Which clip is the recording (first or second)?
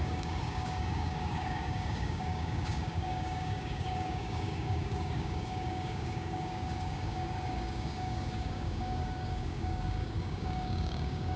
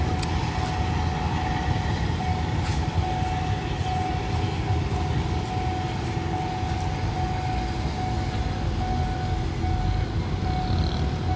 second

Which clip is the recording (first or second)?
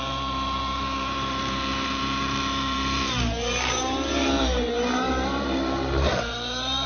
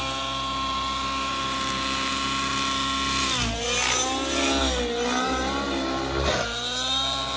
second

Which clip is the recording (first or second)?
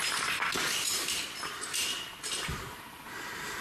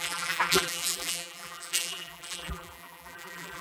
first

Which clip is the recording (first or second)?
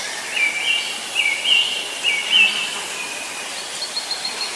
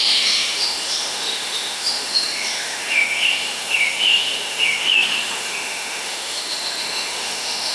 first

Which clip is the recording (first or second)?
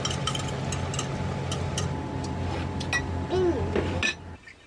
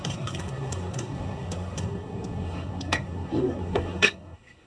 first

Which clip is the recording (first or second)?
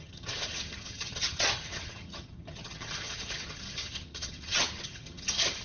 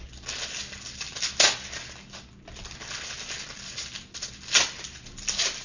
second